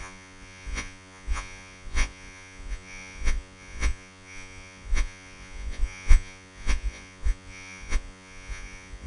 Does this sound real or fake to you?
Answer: fake